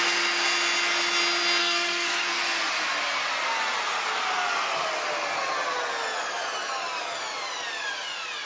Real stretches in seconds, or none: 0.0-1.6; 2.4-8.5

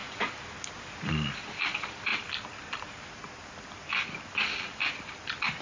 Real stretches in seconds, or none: 0.0-1.1; 2.1-5.6

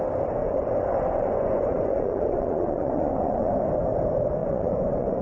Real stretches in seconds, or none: 0.0-0.4; 3.5-4.4

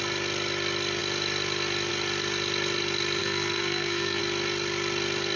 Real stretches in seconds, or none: 0.0-3.2; 4.2-5.4